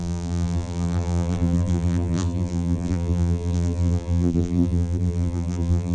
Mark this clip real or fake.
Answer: fake